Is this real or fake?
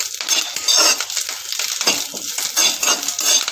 real